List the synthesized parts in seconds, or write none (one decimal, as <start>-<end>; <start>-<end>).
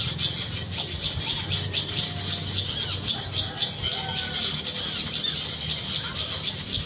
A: none